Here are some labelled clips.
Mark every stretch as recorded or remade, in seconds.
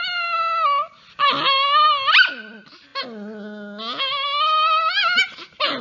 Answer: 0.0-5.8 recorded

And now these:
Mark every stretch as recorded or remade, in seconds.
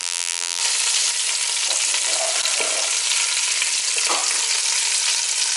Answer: 0.0-0.6 remade; 0.6-5.6 recorded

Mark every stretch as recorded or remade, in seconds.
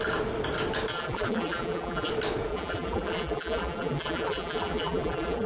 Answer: 0.0-0.9 recorded; 0.9-2.1 remade; 2.1-2.5 recorded; 2.5-5.5 remade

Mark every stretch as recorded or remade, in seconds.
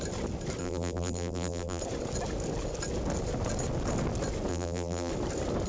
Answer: 0.0-0.6 recorded; 0.6-1.8 remade; 1.8-4.5 recorded; 4.5-5.1 remade; 5.1-5.7 recorded